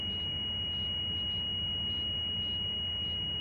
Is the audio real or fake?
real